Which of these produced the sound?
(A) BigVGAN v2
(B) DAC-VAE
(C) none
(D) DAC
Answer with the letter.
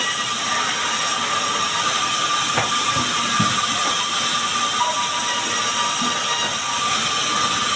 C